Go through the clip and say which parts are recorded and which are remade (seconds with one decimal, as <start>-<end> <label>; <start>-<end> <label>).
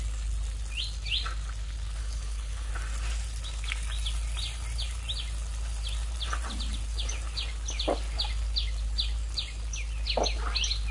0.0-2.0 recorded; 2.0-2.7 remade; 2.7-10.9 recorded